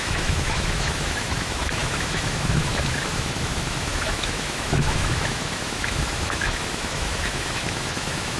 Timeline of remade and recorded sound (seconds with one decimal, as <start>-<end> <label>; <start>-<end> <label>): 0.0-8.4 remade